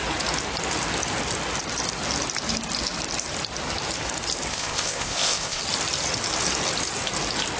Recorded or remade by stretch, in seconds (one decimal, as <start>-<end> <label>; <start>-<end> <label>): 0.0-4.5 recorded; 4.5-5.6 remade; 5.6-7.6 recorded